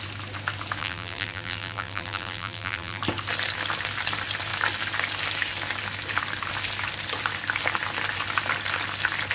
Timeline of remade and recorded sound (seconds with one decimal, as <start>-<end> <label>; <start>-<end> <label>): 0.0-0.8 recorded; 0.8-3.0 remade; 3.0-9.3 recorded